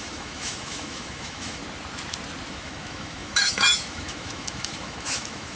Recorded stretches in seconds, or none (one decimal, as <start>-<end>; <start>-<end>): 1.6-2.5